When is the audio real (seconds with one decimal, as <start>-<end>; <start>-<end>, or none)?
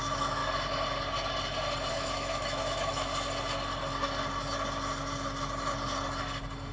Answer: 0.4-1.9; 3.1-6.7